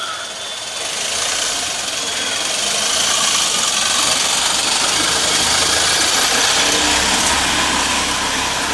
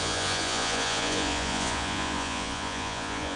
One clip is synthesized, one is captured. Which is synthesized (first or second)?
second